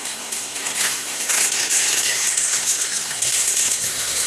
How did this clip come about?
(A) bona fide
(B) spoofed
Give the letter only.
B